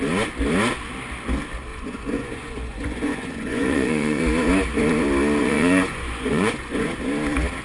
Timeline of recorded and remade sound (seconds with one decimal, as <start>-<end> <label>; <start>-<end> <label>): 0.0-1.7 recorded; 1.7-4.2 remade; 4.2-5.4 recorded; 5.4-6.9 remade; 6.9-7.6 recorded